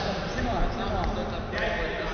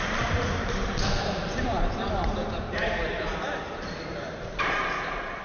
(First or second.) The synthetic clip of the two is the second